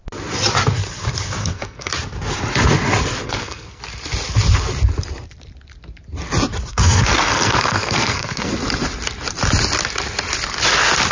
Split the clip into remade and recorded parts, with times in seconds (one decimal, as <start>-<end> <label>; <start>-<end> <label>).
0.0-1.4 recorded; 1.4-1.9 remade; 1.9-3.2 recorded; 3.2-3.8 remade; 3.8-6.7 recorded; 6.7-8.5 remade; 8.5-11.1 recorded